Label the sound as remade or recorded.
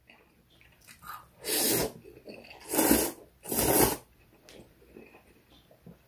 recorded